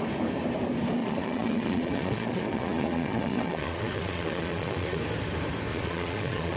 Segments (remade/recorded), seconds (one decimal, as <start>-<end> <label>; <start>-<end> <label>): 0.0-1.0 recorded; 1.0-5.0 remade; 5.0-5.7 recorded; 5.7-6.6 remade

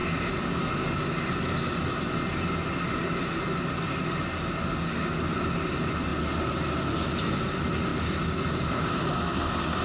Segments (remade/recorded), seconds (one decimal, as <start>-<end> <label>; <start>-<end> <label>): 0.0-9.8 recorded

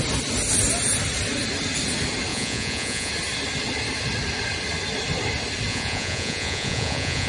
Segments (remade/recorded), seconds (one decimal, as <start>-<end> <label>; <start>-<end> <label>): 0.0-2.3 recorded; 2.3-3.1 remade; 3.1-5.7 recorded; 5.7-7.3 remade

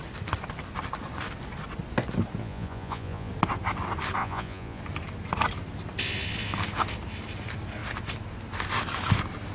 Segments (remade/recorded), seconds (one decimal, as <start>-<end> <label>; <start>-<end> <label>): 0.0-2.4 recorded; 2.4-3.3 remade; 3.3-4.2 recorded; 4.2-4.8 remade; 4.8-9.5 recorded

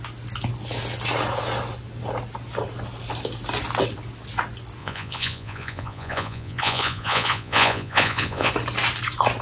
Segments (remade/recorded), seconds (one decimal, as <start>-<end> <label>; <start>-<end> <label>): 0.0-4.8 recorded; 4.8-8.5 remade; 8.5-9.4 recorded